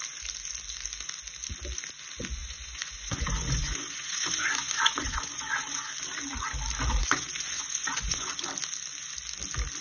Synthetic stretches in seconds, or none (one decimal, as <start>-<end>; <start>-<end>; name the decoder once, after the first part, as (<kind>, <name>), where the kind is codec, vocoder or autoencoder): 2.4-5.9 (vocoder, Vocos); 7.0-8.3